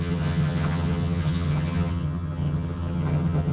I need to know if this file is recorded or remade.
remade